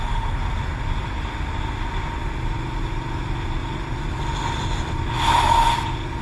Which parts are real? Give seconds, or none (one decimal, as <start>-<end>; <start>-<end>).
0.0-6.2